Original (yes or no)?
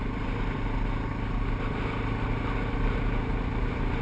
yes